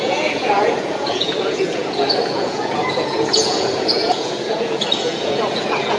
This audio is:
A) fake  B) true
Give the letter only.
A